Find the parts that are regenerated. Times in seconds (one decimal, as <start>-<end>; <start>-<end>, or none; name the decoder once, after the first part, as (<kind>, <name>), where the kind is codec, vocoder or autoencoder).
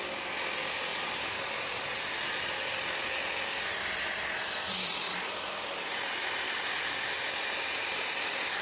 none